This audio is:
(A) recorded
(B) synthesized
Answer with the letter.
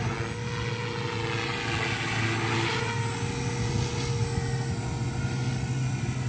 A